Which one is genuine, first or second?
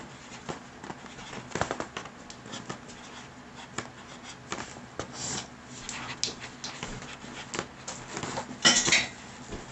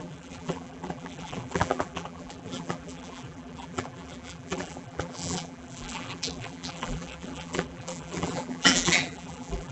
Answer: first